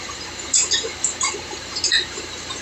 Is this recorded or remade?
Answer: remade